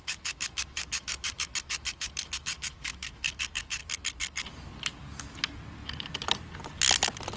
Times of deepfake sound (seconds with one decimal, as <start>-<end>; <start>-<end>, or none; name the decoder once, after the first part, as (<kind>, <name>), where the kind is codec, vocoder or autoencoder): 0.0-3.8 (autoencoder, DAC-VAE)